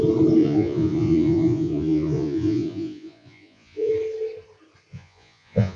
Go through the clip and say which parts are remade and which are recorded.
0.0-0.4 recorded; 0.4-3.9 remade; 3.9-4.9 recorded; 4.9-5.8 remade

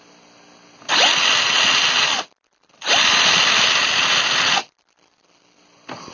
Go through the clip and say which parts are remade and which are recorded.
0.0-6.1 recorded

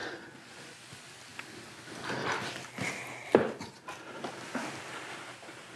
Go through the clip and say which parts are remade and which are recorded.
0.0-0.9 remade; 0.9-5.8 recorded

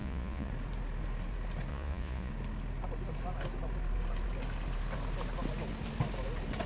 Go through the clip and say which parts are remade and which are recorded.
0.0-0.5 remade; 0.5-1.7 recorded; 1.7-2.3 remade; 2.3-6.7 recorded